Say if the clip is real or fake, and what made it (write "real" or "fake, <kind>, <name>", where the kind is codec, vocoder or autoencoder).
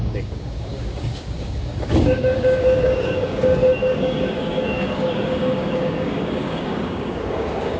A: fake, codec, DAC